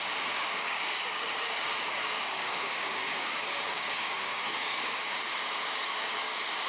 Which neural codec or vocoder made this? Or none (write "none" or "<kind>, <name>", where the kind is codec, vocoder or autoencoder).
codec, DAC